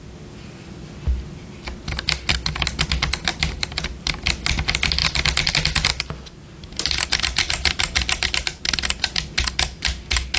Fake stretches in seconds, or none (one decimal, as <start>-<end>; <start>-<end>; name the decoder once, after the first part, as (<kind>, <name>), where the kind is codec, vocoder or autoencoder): 3.3-4.1 (vocoder, BigVGAN v2)